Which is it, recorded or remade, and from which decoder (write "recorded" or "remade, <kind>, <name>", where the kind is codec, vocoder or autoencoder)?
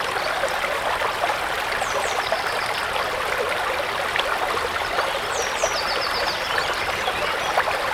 recorded